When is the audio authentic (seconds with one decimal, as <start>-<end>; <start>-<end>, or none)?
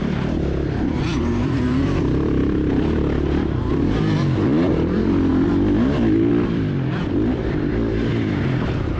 5.3-6.3